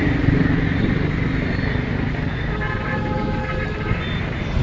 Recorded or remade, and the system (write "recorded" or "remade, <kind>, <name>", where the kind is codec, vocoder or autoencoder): recorded